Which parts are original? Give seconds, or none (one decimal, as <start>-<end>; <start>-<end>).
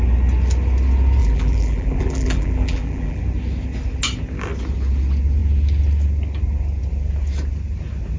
0.0-1.2; 3.2-8.2